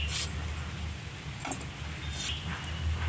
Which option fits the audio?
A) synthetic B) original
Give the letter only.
B